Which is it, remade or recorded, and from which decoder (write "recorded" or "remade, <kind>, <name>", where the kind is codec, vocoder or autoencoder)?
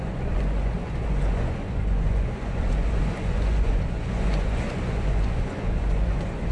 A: remade, vocoder, Vocos